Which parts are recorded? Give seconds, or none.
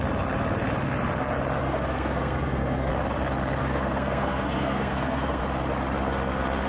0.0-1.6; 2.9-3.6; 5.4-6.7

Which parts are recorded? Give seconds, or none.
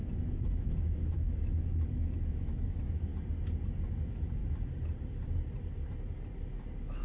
3.1-3.9; 4.4-7.0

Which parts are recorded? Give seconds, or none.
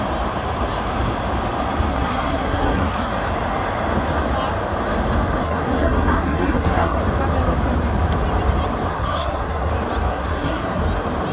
0.0-1.9; 3.1-5.4; 7.0-8.9; 9.7-10.1; 10.8-11.3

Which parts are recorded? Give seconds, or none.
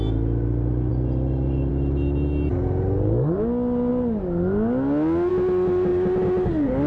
0.0-6.9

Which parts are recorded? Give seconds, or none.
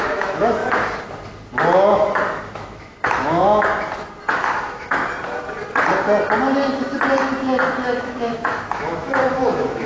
0.6-1.6; 3.7-4.3; 5.0-8.0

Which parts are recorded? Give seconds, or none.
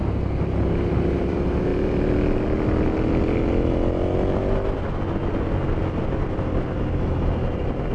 0.0-7.9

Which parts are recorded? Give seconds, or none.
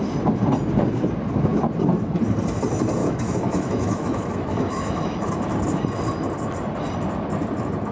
0.0-3.0; 5.3-7.9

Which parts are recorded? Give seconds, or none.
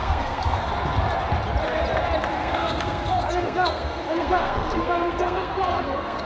0.7-2.4